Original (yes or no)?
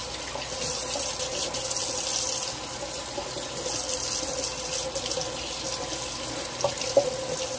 yes